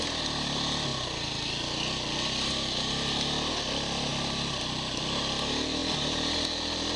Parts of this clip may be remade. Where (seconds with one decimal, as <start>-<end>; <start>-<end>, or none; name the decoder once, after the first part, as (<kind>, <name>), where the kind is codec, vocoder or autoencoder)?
none